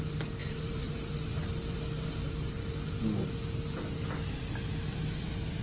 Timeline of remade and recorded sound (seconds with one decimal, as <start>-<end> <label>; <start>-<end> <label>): 0.0-0.4 recorded; 0.4-1.3 remade; 1.3-5.6 recorded